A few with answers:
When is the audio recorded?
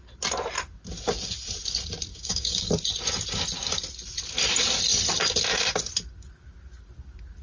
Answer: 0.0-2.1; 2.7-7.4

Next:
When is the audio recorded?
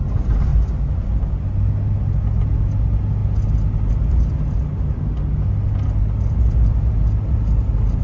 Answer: 0.0-0.5; 1.3-8.0